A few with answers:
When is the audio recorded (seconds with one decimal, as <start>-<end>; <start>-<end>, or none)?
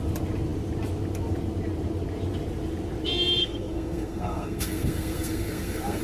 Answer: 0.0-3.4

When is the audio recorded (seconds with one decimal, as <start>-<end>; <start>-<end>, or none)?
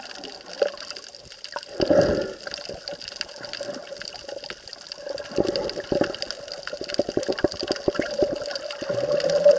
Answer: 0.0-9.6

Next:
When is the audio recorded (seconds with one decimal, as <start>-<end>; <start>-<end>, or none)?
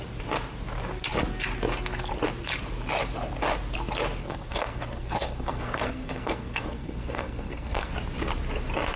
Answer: 0.0-4.2; 7.9-9.0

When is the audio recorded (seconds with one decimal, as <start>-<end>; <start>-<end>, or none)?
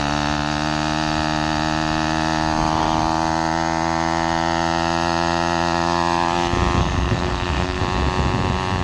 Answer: 0.0-6.8; 7.8-8.8